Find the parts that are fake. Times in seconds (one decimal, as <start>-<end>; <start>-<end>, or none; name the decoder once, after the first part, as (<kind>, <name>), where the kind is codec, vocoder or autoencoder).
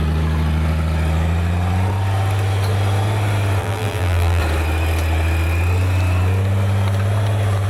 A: 3.6-4.4 (vocoder, BigVGAN v2)